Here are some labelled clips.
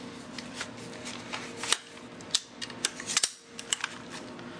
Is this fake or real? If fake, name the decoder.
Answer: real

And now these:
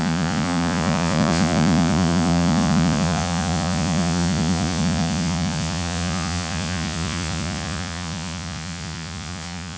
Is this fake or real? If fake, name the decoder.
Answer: fake, vocoder, Vocos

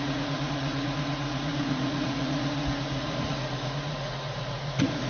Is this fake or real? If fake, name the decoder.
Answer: fake, vocoder, Vocos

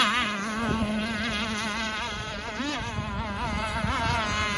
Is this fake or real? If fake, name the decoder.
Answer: real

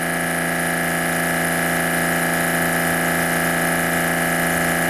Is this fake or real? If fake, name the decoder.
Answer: real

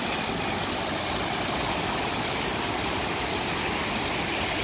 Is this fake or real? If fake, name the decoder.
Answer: real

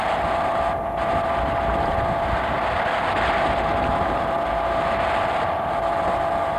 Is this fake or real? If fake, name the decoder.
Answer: real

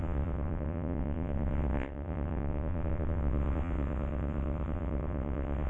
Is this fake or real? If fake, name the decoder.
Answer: fake, vocoder, WaveNeXt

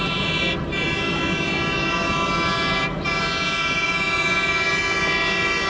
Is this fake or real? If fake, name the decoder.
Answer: real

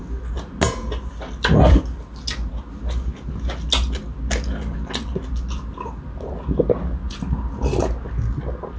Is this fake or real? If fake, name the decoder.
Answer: real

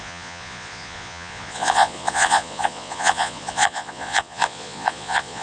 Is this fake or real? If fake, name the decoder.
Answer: fake, vocoder, Vocos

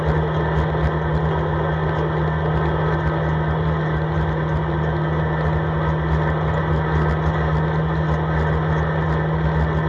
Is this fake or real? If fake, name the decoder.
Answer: real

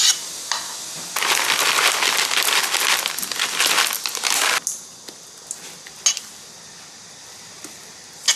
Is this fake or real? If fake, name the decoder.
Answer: real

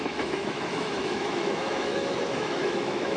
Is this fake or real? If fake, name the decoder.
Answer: fake, autoencoder, DAC-VAE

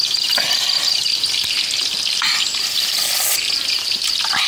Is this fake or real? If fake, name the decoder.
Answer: real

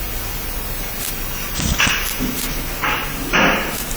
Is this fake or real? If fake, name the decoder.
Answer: real